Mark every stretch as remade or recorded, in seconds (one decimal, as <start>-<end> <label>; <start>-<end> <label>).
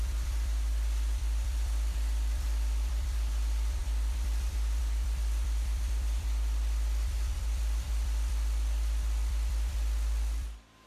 0.0-10.9 remade